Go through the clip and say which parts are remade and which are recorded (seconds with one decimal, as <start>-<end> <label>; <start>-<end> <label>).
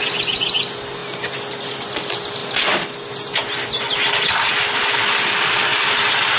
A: 0.0-5.7 recorded; 5.7-6.4 remade